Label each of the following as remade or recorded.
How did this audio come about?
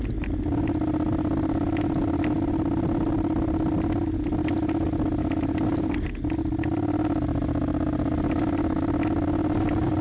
recorded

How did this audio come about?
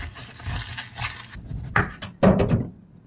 recorded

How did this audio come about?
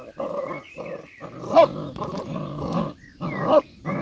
recorded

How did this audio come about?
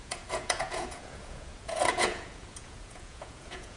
remade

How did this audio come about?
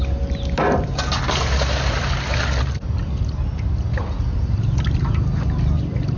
recorded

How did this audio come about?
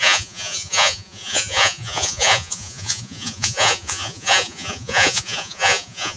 remade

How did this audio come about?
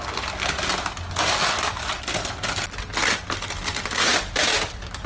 recorded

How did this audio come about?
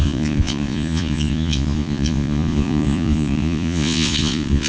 remade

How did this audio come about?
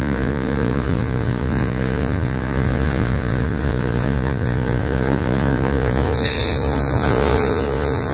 remade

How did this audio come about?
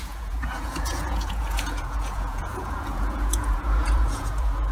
remade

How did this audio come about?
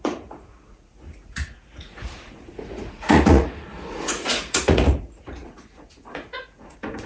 remade